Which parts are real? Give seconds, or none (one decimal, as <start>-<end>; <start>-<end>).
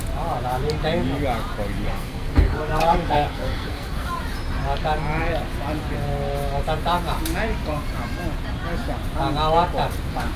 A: 0.0-1.8; 4.1-10.4